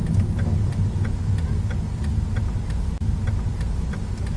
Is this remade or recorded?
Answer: recorded